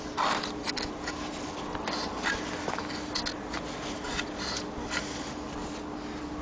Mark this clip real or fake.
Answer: real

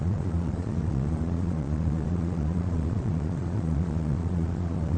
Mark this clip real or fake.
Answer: fake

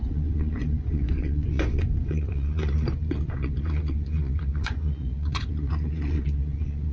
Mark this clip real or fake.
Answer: fake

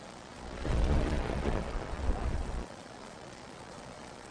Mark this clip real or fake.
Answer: fake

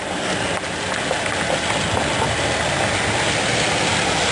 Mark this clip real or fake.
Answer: real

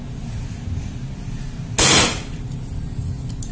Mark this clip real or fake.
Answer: real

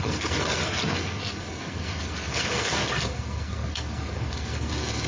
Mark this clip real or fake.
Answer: fake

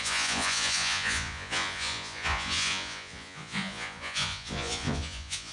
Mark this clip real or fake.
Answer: fake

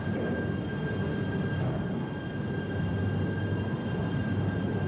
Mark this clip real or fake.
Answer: real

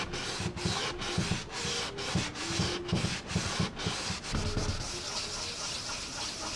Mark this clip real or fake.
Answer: real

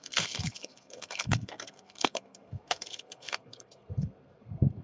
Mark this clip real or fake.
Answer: fake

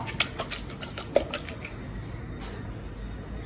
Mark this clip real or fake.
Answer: real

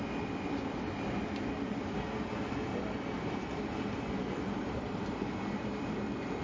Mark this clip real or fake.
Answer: real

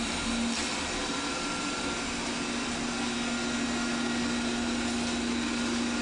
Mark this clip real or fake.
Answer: real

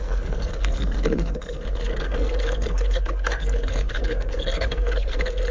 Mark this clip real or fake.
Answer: fake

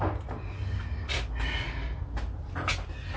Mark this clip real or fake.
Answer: real